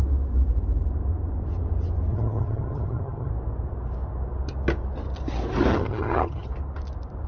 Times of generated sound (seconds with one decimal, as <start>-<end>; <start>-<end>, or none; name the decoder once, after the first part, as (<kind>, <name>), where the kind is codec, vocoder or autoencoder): 2.1-3.3 (vocoder, HiFi-GAN); 5.7-6.5